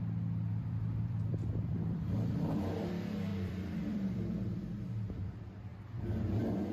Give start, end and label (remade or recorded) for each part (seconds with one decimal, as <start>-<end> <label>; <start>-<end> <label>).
0.0-0.5 recorded; 0.5-2.9 remade; 2.9-3.3 recorded; 3.3-5.3 remade; 5.3-6.7 recorded